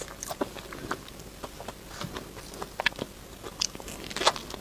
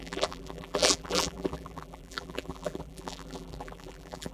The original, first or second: first